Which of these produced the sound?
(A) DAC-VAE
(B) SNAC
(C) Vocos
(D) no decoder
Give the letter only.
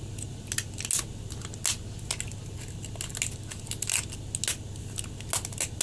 D